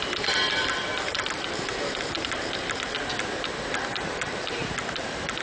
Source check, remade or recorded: remade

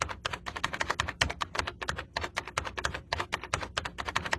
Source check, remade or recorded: recorded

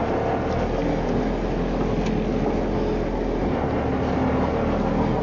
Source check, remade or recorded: recorded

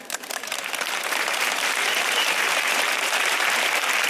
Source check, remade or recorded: remade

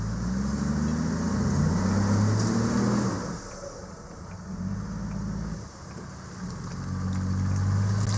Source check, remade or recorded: recorded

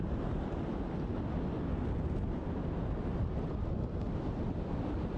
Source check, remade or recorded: recorded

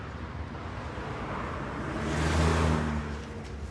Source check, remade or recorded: recorded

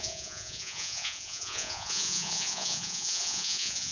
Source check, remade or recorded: remade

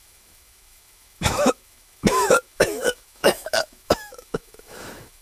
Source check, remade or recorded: remade